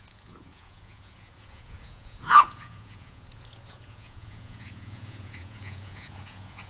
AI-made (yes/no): yes